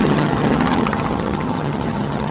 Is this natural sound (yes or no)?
no